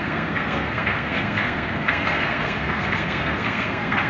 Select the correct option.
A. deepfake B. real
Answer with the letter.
A